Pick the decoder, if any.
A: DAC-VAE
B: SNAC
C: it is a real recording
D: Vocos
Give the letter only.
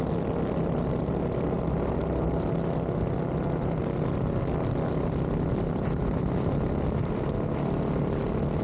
C